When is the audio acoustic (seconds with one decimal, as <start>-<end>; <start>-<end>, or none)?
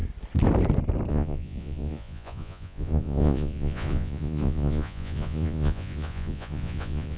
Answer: 0.0-1.1